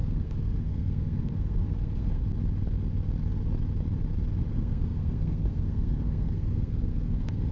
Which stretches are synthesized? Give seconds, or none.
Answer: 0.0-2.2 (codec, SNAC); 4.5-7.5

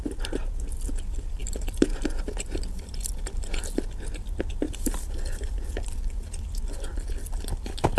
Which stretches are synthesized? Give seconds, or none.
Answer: 0.0-0.4 (vocoder, BigVGAN v2); 0.9-8.0

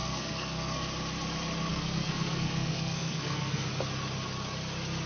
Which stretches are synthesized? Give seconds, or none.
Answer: 0.0-0.8 (codec, SNAC); 1.7-3.7

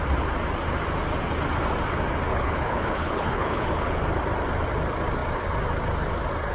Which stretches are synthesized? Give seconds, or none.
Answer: 2.3-3.9 (codec, HILCodec)

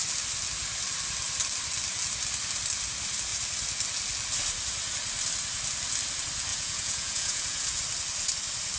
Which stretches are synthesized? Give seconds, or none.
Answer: 6.5-7.8 (vocoder, Vocos)

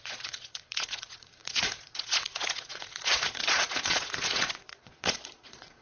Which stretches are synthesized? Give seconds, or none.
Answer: 0.0-5.8 (vocoder, Vocos)

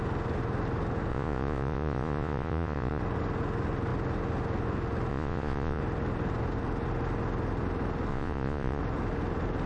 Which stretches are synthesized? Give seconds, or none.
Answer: 1.1-3.0 (vocoder, Vocos); 5.1-5.8; 8.1-8.8